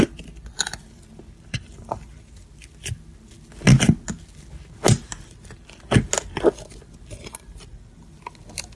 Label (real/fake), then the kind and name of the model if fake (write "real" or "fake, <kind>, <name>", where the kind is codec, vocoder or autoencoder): real